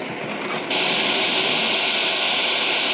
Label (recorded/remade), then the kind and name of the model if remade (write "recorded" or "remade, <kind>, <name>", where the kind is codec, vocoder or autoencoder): recorded